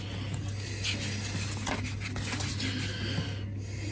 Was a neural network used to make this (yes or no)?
no